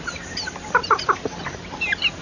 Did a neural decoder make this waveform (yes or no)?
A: no